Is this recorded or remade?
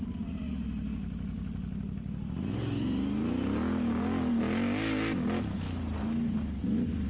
recorded